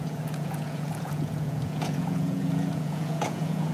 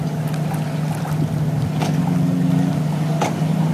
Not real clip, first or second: first